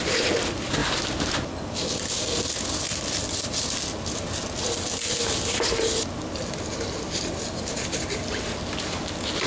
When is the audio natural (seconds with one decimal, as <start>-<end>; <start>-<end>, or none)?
0.0-9.5